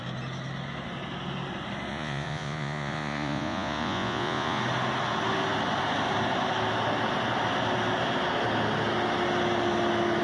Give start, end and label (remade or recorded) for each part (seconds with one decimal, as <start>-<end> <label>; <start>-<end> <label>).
0.0-1.9 recorded; 1.9-4.6 remade; 4.6-10.2 recorded